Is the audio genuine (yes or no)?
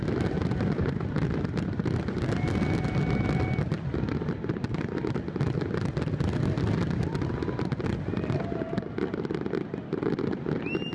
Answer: yes